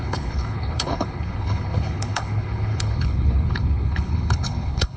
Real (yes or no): no